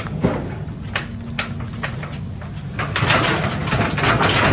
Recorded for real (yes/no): yes